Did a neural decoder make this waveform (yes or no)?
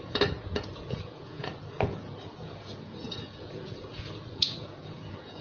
yes